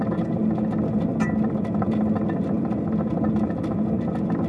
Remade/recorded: recorded